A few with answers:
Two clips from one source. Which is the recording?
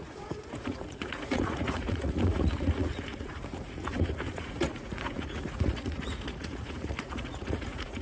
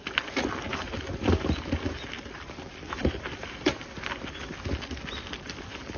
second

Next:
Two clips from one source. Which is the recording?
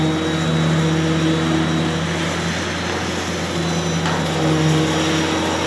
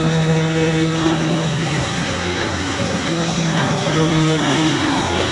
first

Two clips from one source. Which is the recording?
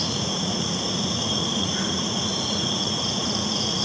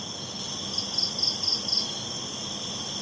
second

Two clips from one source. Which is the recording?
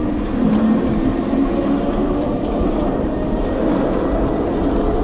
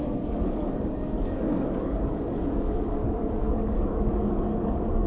first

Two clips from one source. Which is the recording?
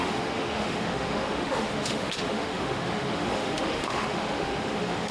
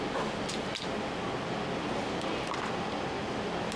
second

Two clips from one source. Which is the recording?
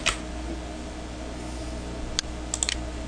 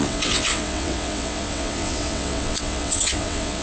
first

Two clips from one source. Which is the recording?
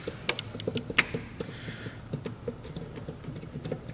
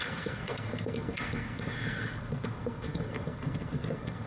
first